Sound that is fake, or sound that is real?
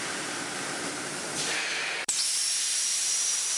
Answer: fake